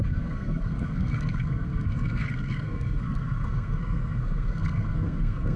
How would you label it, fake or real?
fake